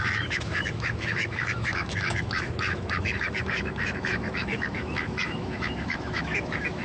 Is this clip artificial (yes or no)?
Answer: yes